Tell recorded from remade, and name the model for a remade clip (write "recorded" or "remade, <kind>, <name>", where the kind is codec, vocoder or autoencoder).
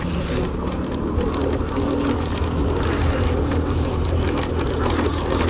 recorded